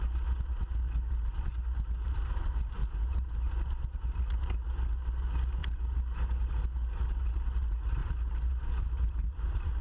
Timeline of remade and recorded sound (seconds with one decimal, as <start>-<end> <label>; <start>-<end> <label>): 0.0-2.8 recorded; 2.8-3.5 remade; 3.5-5.6 recorded; 5.6-6.5 remade; 6.5-8.0 recorded; 8.0-9.8 remade